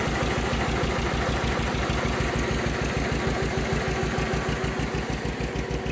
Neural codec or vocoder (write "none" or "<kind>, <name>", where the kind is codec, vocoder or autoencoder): none